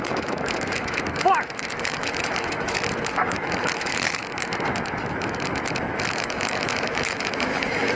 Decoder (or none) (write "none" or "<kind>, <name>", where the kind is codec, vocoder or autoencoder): autoencoder, DAC-VAE